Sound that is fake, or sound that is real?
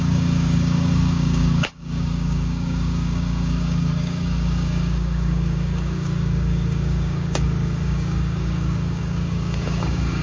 fake